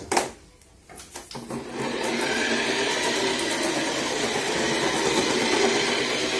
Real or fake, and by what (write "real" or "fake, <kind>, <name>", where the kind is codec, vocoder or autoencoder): real